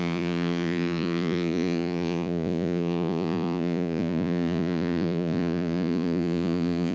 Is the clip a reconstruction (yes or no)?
yes